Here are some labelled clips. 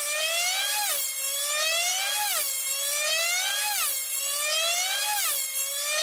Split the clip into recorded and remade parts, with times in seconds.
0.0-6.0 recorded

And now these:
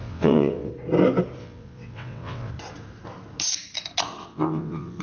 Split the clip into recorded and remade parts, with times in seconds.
0.0-0.7 remade; 0.7-1.4 recorded; 1.4-2.5 remade; 2.5-4.2 recorded; 4.2-5.0 remade

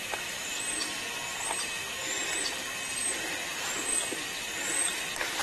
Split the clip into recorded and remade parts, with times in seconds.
0.0-0.6 remade; 0.6-3.4 recorded; 3.4-5.4 remade

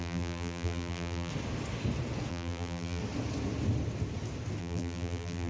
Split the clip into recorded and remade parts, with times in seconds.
0.0-1.3 remade; 1.3-2.3 recorded; 2.3-3.0 remade; 3.0-4.6 recorded; 4.6-5.5 remade

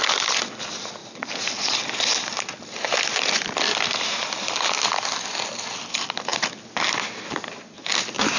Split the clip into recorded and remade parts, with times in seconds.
0.0-8.4 recorded

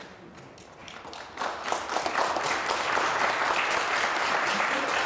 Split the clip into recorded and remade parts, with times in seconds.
0.0-5.1 recorded

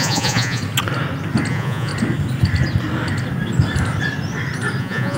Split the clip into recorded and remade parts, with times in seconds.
0.0-0.6 remade; 0.6-1.5 recorded; 1.5-1.9 remade; 1.9-4.8 recorded; 4.8-5.2 remade